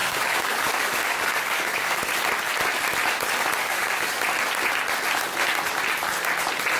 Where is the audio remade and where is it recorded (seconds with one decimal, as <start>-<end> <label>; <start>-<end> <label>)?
0.0-2.0 remade; 2.0-3.6 recorded; 3.6-4.2 remade; 4.2-6.8 recorded